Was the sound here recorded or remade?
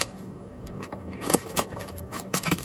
remade